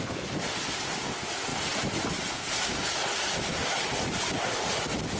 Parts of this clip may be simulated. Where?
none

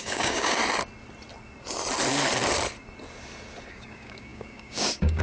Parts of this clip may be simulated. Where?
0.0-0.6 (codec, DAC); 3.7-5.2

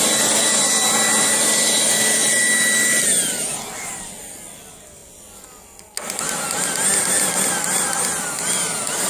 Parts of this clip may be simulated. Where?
none

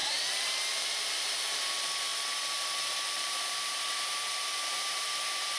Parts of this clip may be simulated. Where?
0.0-1.7 (vocoder, BigVGAN v2); 2.1-5.6